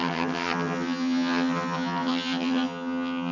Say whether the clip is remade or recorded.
remade